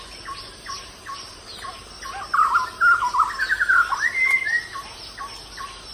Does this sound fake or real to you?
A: real